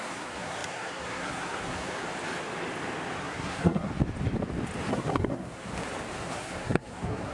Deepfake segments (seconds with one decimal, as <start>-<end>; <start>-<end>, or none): 0.0-2.0; 3.2-3.9; 4.9-5.7; 6.2-7.3